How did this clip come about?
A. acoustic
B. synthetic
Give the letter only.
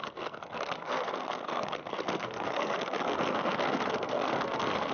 B